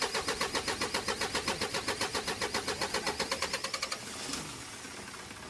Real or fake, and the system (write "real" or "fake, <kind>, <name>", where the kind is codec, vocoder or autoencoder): real